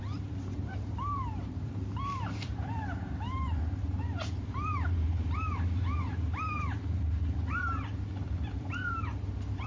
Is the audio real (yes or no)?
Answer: no